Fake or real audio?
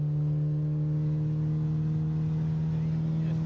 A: real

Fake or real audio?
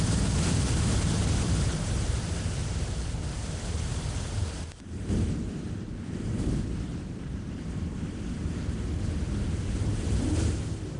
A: real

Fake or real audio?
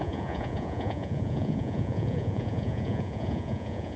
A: fake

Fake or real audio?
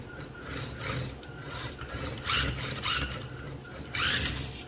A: real